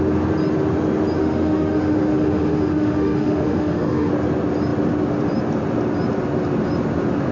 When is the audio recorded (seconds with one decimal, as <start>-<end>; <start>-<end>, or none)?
0.0-1.2; 4.1-7.3